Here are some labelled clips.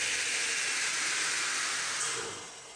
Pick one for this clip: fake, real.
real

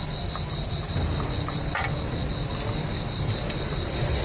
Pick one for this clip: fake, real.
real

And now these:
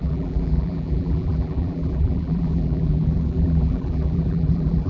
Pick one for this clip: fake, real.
fake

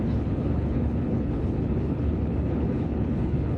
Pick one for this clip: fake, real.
fake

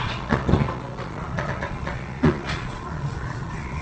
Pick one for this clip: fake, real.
fake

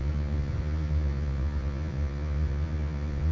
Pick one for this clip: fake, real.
fake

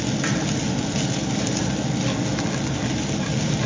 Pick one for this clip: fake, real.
real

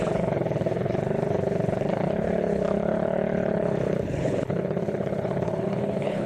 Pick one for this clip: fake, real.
fake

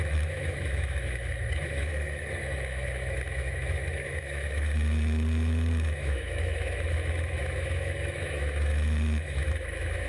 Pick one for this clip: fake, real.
fake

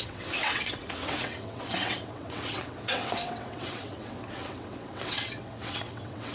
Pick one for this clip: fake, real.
fake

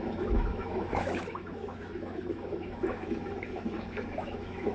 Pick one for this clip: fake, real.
fake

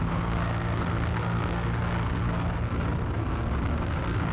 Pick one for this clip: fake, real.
fake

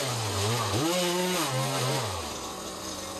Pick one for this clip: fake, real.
real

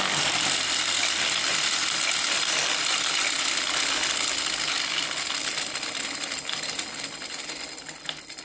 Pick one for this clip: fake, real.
real